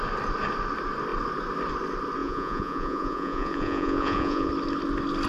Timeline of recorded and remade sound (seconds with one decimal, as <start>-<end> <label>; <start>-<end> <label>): 0.0-2.2 recorded; 2.2-4.5 remade; 4.5-5.3 recorded